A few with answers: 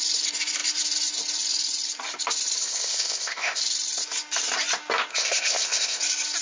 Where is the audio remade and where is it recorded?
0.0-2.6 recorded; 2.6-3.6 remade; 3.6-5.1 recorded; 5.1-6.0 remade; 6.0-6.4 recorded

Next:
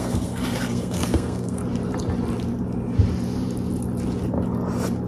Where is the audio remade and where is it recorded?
0.0-1.6 remade; 1.6-5.1 recorded